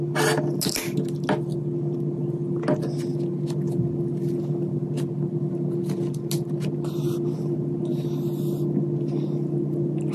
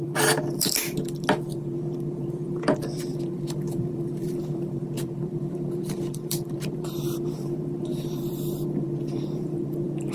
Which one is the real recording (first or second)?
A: first